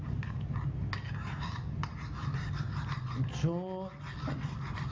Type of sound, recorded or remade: recorded